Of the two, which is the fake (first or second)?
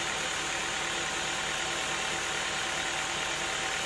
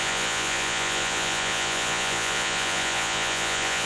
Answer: second